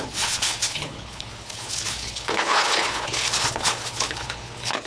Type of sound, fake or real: fake